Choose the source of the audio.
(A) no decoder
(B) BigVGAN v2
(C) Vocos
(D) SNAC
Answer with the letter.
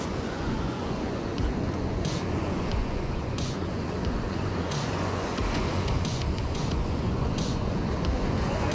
C